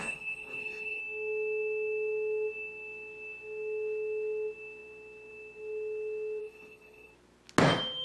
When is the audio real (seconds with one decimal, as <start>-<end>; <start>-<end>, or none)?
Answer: 1.0-6.4; 7.1-8.0